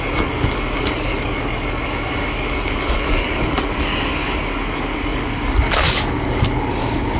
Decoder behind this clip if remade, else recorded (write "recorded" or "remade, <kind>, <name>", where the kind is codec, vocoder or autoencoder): remade, codec, DAC